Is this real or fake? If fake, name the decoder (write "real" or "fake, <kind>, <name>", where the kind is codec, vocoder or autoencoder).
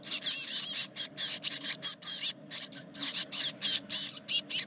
real